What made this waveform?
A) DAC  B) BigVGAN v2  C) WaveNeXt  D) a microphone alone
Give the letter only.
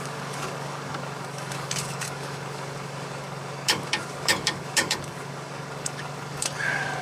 A